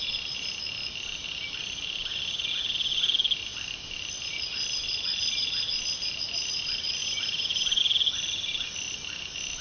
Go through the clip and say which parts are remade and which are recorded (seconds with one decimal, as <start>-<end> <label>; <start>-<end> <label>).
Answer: 0.0-7.0 recorded; 7.0-7.8 remade; 7.8-9.6 recorded